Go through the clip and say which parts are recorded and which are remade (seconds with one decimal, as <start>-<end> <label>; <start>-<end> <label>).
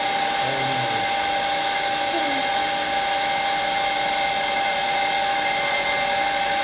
0.0-6.6 recorded